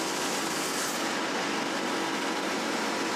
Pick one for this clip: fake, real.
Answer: real